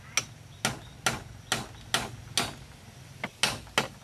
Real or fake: real